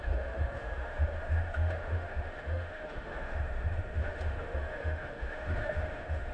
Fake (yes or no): yes